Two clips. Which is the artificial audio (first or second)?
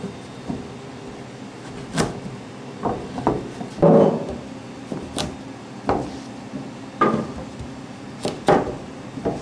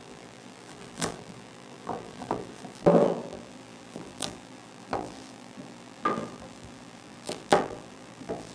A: second